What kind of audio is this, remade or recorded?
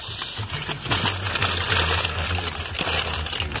recorded